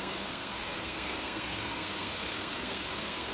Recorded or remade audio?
remade